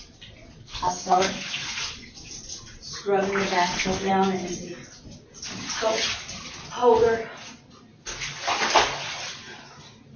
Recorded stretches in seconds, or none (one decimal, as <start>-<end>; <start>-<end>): 0.0-0.6; 1.3-3.5; 4.1-10.2